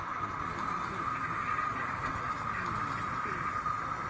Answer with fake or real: real